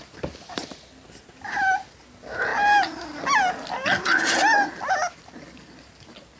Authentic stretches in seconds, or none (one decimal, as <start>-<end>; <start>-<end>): 0.0-6.4